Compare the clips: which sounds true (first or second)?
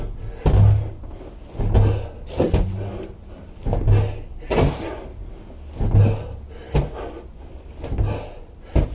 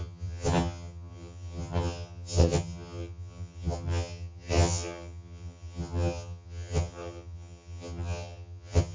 first